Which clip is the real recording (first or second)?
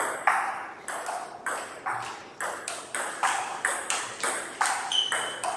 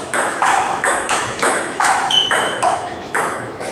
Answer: first